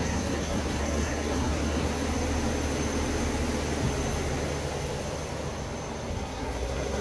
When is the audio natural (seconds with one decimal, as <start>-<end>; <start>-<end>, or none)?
1.9-6.1

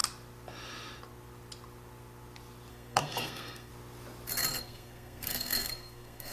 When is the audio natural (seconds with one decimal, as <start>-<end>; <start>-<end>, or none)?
0.0-2.7; 3.7-4.6